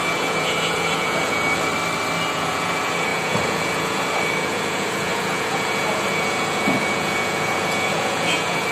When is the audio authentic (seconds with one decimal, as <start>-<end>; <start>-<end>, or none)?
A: 1.7-2.3